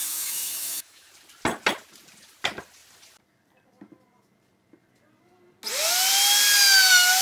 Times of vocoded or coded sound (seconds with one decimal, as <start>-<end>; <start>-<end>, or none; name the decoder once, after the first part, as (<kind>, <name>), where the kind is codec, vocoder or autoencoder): 0.0-1.1 (autoencoder, DAC-VAE)